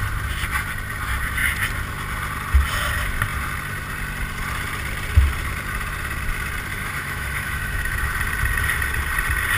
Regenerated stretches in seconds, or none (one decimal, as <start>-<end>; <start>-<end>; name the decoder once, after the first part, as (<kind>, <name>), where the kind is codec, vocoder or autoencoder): 6.7-8.1 (autoencoder, DAC-VAE)